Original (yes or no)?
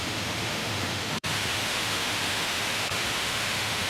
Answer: no